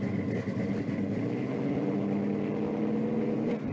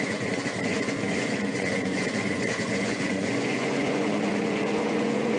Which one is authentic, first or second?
first